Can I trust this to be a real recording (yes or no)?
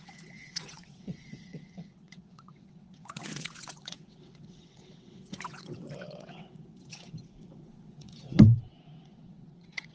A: no